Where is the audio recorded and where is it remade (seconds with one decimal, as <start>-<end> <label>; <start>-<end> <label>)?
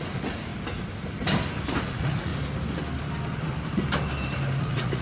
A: 0.0-0.5 remade; 0.5-1.8 recorded; 1.8-2.3 remade; 2.3-4.6 recorded; 4.6-5.0 remade